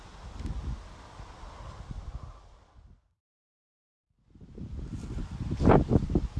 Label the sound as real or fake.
real